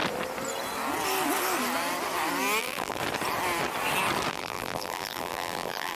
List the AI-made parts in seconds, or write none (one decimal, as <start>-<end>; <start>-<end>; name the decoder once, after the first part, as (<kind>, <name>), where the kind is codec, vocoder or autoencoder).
2.6-3.0 (vocoder, BigVGAN v2); 4.3-6.0